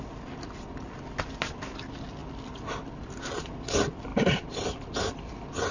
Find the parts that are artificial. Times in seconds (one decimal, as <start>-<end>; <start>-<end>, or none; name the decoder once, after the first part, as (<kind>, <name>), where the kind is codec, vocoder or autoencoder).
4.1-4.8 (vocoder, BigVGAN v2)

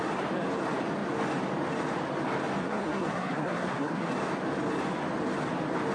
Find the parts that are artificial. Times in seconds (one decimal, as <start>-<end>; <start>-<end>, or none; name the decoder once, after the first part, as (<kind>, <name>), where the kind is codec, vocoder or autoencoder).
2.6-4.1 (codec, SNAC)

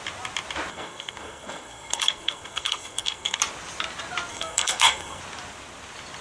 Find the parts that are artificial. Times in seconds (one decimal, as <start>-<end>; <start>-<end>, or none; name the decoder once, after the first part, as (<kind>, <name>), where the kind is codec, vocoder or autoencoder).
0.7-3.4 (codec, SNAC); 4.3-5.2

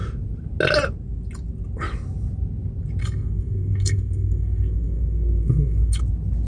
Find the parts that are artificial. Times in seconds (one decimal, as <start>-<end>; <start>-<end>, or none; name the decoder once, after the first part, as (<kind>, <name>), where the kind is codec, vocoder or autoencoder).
3.0-6.0 (codec, SNAC)

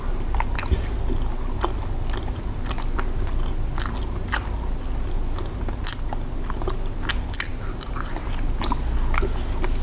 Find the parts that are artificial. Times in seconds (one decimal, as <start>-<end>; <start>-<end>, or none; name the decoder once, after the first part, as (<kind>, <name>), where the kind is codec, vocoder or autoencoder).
none

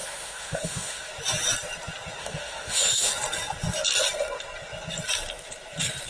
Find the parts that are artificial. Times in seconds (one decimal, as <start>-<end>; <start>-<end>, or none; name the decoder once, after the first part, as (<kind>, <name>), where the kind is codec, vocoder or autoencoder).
0.0-1.1 (autoencoder, DAC-VAE); 2.2-3.1

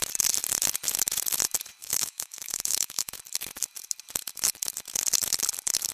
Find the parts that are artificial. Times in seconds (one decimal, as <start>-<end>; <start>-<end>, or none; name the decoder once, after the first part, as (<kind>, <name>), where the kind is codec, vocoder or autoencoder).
1.8-3.1 (autoencoder, DAC-VAE)

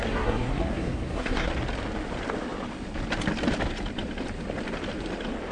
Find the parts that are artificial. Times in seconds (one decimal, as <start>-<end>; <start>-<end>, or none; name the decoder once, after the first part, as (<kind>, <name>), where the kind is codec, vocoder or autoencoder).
0.0-1.5 (codec, SNAC)